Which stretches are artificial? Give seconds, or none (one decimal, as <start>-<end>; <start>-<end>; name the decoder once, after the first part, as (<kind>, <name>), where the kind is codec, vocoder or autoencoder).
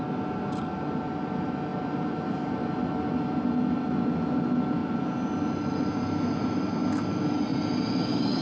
1.7-2.7 (vocoder, BigVGAN v2)